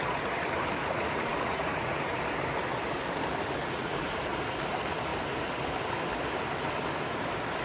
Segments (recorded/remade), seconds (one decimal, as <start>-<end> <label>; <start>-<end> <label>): 0.0-0.8 recorded; 0.8-2.2 remade; 2.2-3.6 recorded; 3.6-4.2 remade; 4.2-7.6 recorded